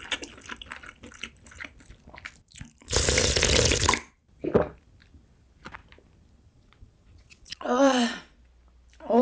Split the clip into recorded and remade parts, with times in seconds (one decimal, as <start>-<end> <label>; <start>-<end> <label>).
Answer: 0.0-6.5 recorded; 6.5-8.4 remade; 8.4-9.2 recorded